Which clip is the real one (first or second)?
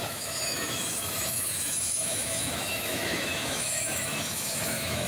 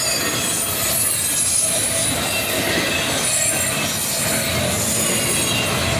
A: second